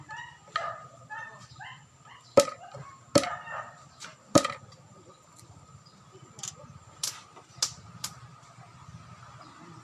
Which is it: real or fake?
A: real